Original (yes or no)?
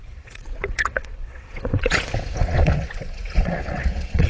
no